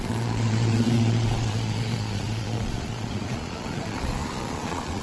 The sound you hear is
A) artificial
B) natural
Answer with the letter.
A